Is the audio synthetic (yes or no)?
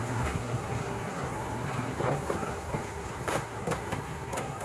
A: yes